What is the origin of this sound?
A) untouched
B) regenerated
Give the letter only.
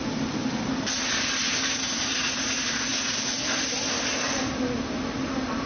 A